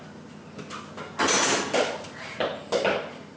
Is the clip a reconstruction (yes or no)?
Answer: no